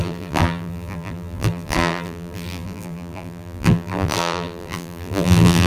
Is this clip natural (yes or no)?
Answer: no